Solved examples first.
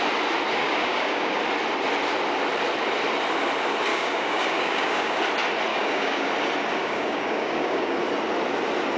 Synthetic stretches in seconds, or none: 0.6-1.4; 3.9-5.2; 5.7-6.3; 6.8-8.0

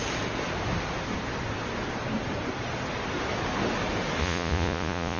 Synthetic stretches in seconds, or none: 4.2-5.2

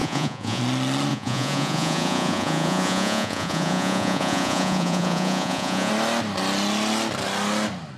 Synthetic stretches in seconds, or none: 0.0-0.6; 1.1-5.9

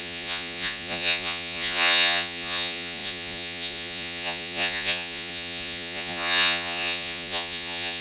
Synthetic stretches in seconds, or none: 0.0-8.0